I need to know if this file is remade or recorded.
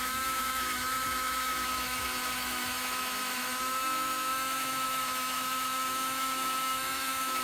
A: remade